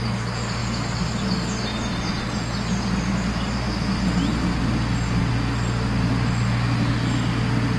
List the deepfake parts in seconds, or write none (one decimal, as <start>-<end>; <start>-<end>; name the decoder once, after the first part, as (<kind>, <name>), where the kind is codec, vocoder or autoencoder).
none